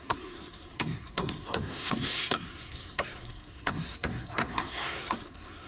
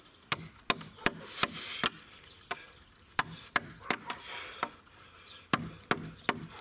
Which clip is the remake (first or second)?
first